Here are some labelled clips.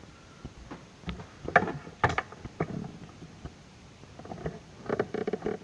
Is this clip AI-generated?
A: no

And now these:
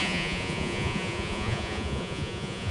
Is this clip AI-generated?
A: yes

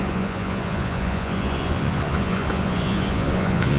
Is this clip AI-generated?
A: yes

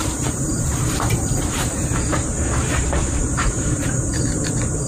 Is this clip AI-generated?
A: yes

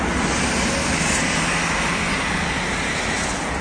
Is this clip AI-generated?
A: no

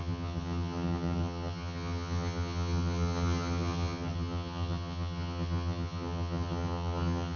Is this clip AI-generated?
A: yes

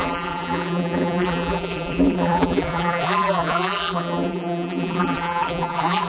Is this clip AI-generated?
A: yes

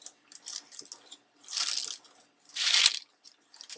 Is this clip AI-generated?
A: no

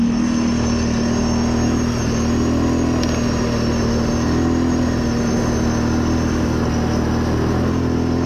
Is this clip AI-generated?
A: no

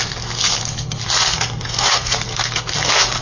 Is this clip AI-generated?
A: yes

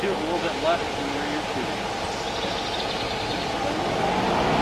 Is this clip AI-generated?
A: no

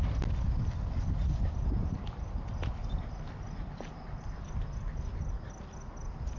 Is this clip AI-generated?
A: no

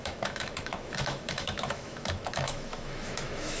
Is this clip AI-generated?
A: yes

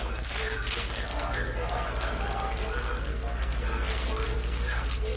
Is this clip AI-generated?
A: yes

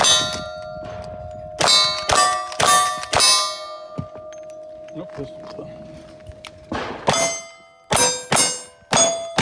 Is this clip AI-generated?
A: no